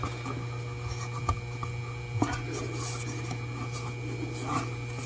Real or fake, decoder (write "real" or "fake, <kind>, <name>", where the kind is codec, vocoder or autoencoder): real